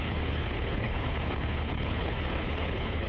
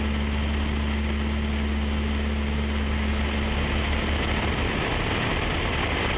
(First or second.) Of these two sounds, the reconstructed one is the first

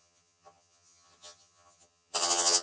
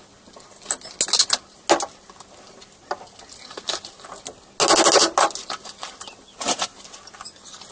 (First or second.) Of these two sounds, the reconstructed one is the first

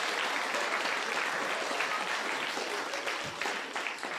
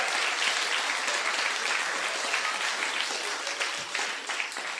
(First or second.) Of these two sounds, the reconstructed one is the first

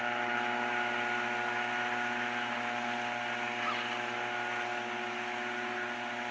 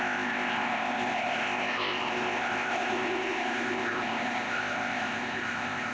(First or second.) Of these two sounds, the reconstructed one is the second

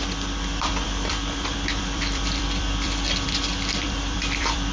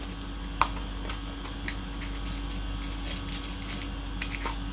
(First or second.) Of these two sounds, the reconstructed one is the first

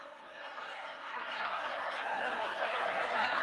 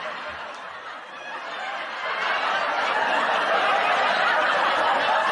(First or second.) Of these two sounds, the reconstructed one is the first